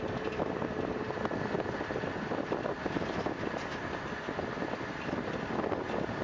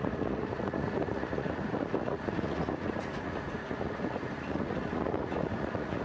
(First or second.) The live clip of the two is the first